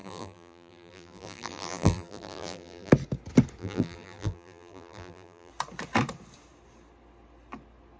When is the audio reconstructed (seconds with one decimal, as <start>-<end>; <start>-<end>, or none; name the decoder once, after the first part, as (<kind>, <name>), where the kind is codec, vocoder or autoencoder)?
0.0-2.9 (vocoder, BigVGAN v2); 3.6-5.5